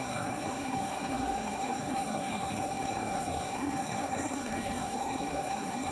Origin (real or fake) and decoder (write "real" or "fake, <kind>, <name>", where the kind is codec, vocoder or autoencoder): fake, codec, SNAC